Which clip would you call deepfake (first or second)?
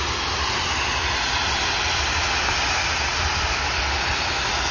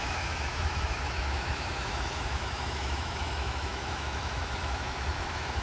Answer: second